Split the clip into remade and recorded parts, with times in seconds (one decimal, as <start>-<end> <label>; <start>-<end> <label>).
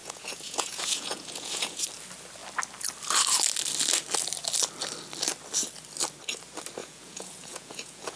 0.0-1.8 remade; 1.8-6.8 recorded; 6.8-8.2 remade